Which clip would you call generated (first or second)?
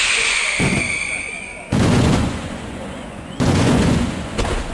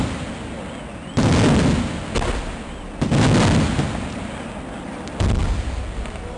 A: first